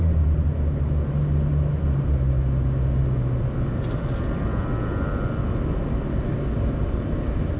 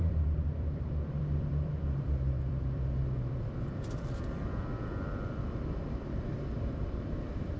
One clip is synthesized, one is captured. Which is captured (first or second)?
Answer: first